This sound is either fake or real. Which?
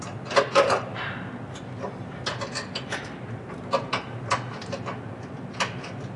real